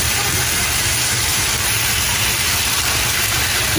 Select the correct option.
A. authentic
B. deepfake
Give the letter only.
B